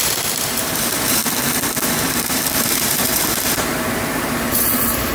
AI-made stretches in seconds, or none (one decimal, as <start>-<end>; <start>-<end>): 0.0-1.2; 1.9-5.1